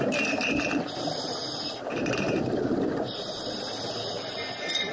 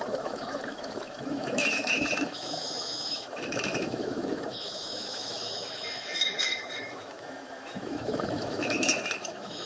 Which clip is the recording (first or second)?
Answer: first